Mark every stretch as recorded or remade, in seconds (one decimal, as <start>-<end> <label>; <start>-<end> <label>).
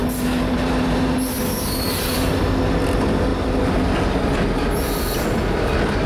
0.0-6.1 recorded